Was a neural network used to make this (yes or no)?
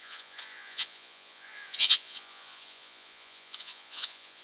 yes